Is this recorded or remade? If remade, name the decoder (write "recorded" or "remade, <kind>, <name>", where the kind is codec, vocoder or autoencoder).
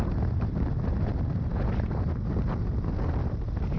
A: remade, vocoder, BigVGAN v2